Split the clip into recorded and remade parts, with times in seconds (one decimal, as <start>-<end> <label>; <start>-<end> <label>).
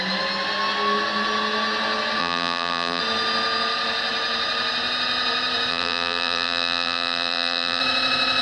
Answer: 0.0-2.2 recorded; 2.2-3.0 remade; 3.0-5.7 recorded; 5.7-7.8 remade; 7.8-8.4 recorded